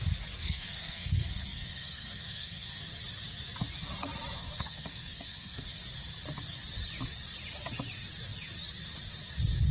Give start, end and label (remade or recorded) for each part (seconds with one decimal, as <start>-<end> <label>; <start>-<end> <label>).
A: 0.0-0.4 recorded; 0.4-2.8 remade; 2.8-4.4 recorded; 4.4-5.8 remade; 5.8-9.7 recorded